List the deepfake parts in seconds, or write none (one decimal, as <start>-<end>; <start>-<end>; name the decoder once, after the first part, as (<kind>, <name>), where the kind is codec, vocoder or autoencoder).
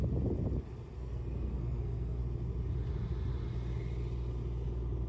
1.0-2.2 (codec, SNAC)